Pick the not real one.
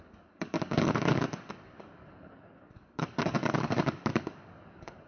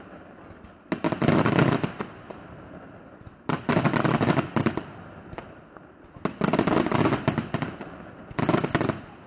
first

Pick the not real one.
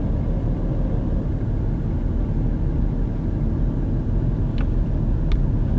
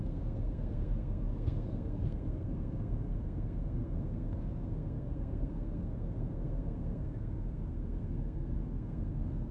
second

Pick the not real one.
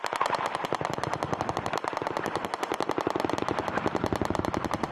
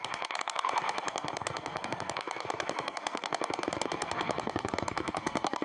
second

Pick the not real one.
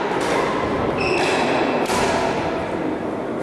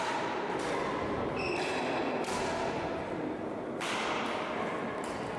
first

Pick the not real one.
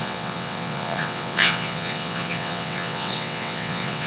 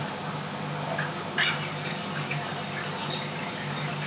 first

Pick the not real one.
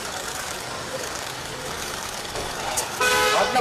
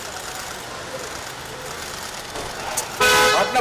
first